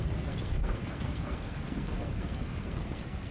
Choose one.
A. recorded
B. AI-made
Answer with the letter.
B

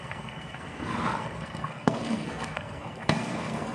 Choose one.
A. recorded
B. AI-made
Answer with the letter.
B